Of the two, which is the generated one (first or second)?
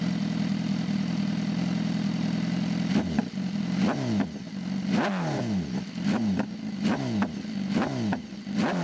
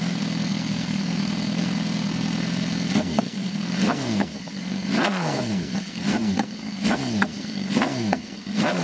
second